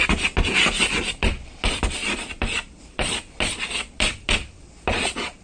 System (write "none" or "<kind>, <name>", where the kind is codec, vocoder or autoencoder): none